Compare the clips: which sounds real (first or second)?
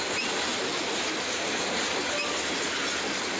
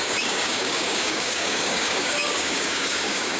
first